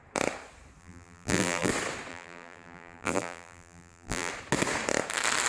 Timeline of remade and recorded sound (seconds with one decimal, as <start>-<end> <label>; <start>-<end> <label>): 0.0-0.8 recorded; 0.8-1.7 remade; 1.7-2.1 recorded; 2.1-4.3 remade; 4.3-5.5 recorded